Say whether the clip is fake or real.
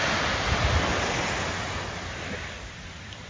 real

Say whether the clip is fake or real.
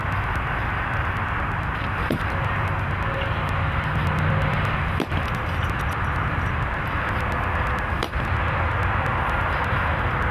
real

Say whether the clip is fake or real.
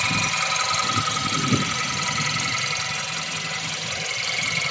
real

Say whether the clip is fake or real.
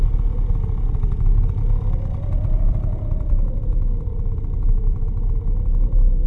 real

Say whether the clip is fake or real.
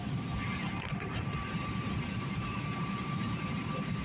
fake